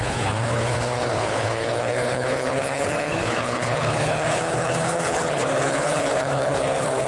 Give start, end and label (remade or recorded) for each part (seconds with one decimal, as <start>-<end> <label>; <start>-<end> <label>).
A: 0.0-7.1 remade